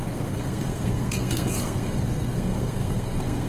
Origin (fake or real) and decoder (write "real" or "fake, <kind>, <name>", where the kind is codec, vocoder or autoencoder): fake, codec, SNAC